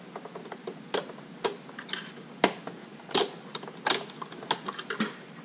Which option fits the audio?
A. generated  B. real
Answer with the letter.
B